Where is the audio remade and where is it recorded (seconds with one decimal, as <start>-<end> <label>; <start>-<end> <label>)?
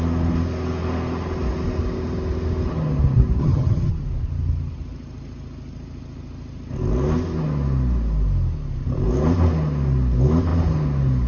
0.0-3.4 recorded; 3.4-3.9 remade; 3.9-11.3 recorded